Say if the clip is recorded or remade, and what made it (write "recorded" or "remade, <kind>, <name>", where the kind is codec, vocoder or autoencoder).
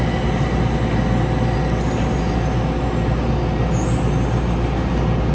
recorded